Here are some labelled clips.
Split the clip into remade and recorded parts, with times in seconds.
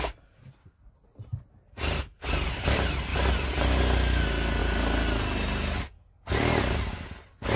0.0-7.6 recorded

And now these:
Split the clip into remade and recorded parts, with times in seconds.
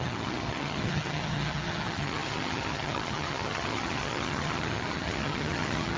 0.0-6.0 remade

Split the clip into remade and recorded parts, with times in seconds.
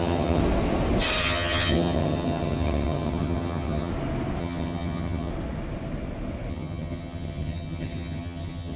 0.0-0.4 remade; 0.4-1.2 recorded; 1.2-3.9 remade; 3.9-4.4 recorded; 4.4-5.3 remade; 5.3-6.5 recorded; 6.5-8.8 remade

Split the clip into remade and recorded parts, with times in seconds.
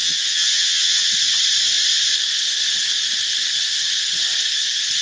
0.0-1.1 remade; 1.1-5.0 recorded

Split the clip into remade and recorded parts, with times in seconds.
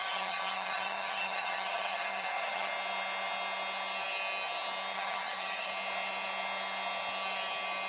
0.0-2.7 remade; 2.7-4.9 recorded; 4.9-5.7 remade; 5.7-7.9 recorded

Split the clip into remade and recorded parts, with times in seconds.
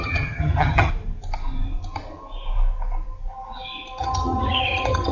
0.0-0.9 remade; 0.9-4.0 recorded; 4.0-5.1 remade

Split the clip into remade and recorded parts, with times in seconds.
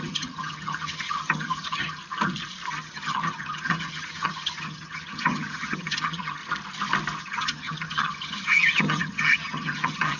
0.0-2.0 remade; 2.0-2.7 recorded; 2.7-6.4 remade; 6.4-7.2 recorded; 7.2-10.2 remade